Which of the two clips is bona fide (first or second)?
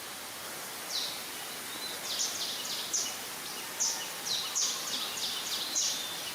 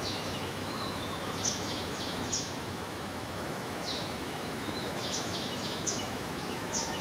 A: first